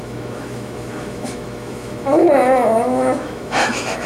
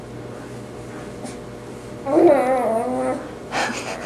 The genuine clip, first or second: second